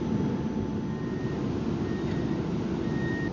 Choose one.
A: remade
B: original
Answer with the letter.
B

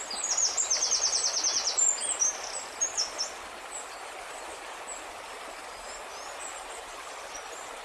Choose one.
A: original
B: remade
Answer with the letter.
A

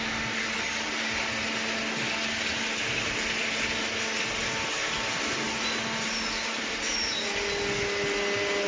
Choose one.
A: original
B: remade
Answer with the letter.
A